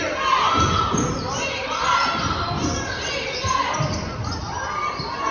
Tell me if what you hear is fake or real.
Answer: real